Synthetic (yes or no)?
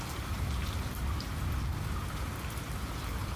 no